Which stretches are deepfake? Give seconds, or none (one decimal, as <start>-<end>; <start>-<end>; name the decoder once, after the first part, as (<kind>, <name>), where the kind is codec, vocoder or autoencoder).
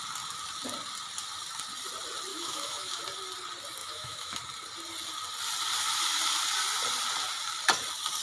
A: 2.3-3.0 (autoencoder, DAC-VAE); 3.8-4.4